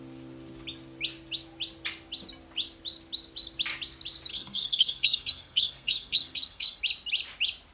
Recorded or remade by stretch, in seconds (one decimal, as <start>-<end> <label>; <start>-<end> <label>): 0.0-4.3 recorded; 4.3-6.8 remade; 6.8-7.7 recorded